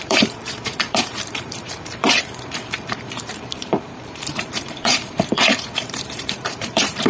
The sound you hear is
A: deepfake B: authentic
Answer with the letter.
A